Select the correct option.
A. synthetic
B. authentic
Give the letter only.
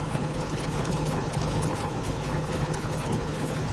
A